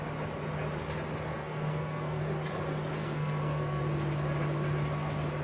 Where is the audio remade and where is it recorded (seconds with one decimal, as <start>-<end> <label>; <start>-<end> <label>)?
0.0-1.3 recorded; 1.3-2.2 remade; 2.2-3.0 recorded; 3.0-3.8 remade; 3.8-5.4 recorded